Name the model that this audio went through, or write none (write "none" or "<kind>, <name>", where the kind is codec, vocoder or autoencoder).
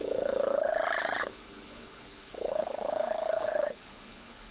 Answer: codec, HILCodec